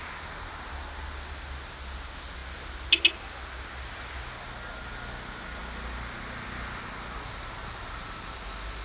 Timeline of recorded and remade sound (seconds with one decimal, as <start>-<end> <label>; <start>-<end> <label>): 0.0-8.8 recorded